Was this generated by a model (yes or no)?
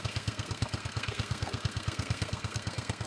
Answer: yes